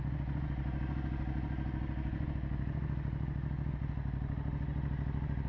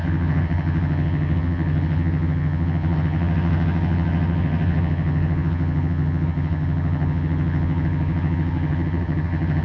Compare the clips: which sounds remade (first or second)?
second